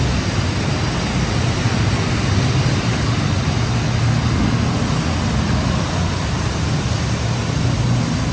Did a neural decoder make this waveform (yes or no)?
no